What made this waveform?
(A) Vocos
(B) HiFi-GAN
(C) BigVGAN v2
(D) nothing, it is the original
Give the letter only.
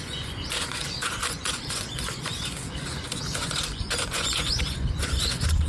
A